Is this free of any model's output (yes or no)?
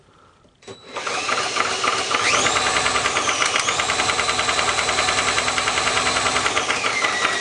yes